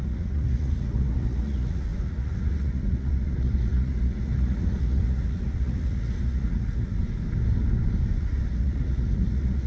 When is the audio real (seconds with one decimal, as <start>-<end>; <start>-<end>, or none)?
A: 7.0-8.2